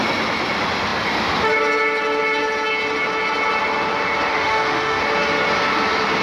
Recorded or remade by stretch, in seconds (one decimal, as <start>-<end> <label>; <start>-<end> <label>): 0.0-4.3 recorded; 4.3-5.0 remade; 5.0-6.2 recorded